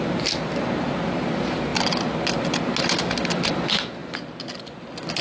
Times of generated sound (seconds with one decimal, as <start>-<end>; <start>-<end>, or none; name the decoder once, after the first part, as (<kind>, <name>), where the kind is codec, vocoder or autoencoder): none